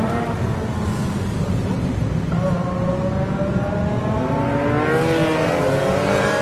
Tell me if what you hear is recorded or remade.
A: recorded